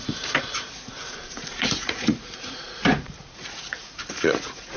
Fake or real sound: fake